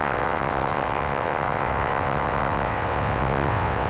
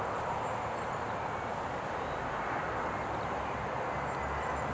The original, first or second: second